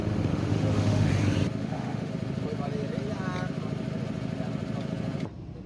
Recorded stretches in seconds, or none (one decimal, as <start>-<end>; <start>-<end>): 1.1-1.6; 2.1-5.7